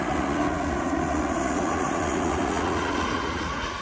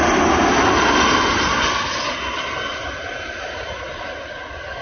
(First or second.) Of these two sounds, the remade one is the first